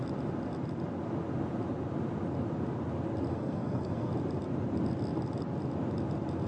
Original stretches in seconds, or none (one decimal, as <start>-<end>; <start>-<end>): 0.0-3.3; 4.1-6.5